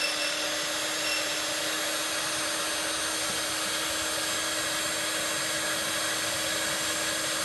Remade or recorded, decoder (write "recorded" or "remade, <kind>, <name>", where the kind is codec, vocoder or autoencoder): recorded